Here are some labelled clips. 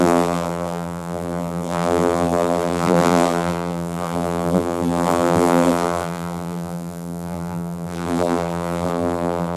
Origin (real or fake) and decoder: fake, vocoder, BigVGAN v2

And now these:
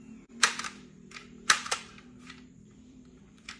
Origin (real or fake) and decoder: fake, vocoder, BigVGAN v2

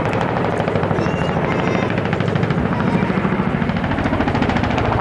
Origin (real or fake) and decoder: fake, vocoder, BigVGAN v2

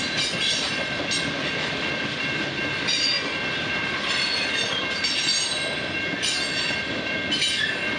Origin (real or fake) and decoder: fake, vocoder, BigVGAN v2